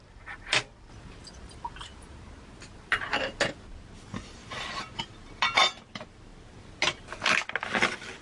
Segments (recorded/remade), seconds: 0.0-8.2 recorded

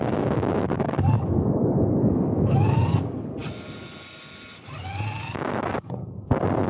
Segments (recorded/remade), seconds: 0.0-3.4 remade; 3.4-5.2 recorded; 5.2-6.7 remade

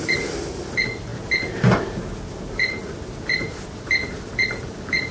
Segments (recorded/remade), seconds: 0.0-5.1 recorded

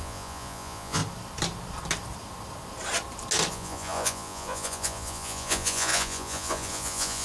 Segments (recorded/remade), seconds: 0.0-1.0 remade; 1.0-3.5 recorded; 3.5-7.2 remade

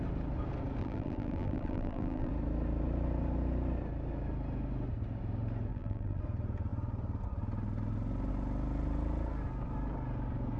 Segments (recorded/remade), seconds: 0.0-0.8 recorded; 0.8-2.3 remade; 2.3-5.7 recorded; 5.7-6.2 remade; 6.2-10.6 recorded